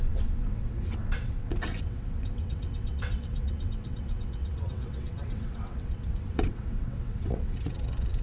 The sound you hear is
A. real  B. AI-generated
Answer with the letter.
B